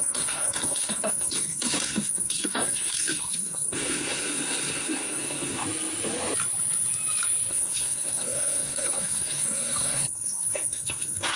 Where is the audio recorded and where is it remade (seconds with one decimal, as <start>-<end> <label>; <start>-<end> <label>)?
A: 0.0-5.6 remade; 5.6-7.5 recorded; 7.5-11.4 remade